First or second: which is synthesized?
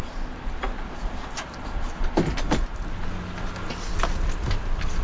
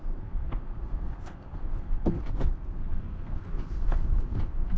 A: second